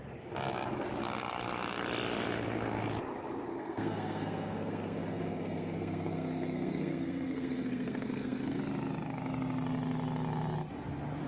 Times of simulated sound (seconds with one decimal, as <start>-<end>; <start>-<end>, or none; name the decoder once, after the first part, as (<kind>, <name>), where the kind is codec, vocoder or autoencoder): 3.5-8.6 (codec, SNAC)